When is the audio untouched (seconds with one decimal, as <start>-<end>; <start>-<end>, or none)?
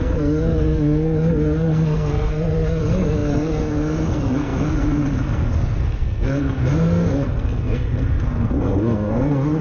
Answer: none